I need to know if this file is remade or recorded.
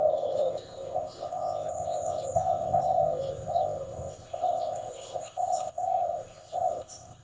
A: remade